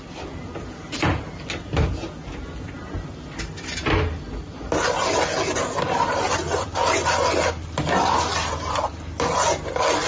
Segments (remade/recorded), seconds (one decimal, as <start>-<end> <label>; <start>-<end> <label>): 0.0-10.1 recorded